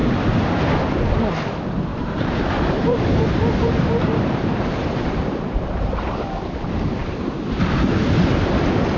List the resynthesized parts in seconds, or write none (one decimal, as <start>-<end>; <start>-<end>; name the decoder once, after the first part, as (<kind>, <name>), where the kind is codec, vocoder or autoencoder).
1.9-6.1 (vocoder, BigVGAN v2)